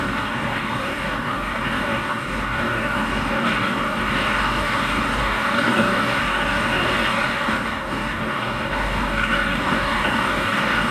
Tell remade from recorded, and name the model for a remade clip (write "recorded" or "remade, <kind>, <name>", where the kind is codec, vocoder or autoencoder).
remade, codec, DAC